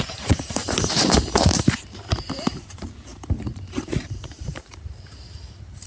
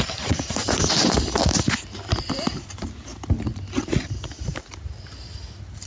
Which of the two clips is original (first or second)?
second